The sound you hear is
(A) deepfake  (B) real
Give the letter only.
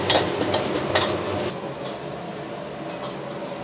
B